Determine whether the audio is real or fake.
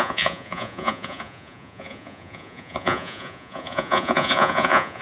fake